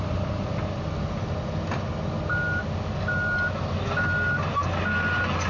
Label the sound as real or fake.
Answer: real